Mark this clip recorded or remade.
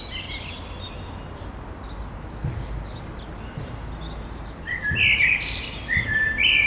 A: recorded